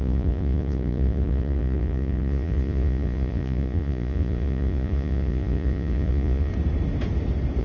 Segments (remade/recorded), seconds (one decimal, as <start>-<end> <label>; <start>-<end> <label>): 0.0-6.5 remade; 6.5-7.6 recorded